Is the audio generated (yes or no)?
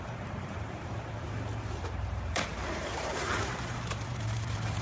yes